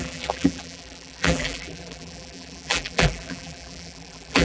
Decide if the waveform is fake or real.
fake